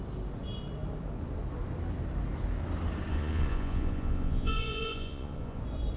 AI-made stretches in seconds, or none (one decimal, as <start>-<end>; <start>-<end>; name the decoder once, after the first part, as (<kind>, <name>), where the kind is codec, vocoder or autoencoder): 3.1-5.6 (vocoder, Vocos)